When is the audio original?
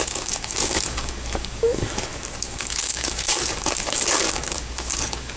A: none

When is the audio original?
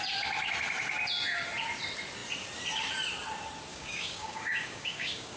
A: 0.0-3.7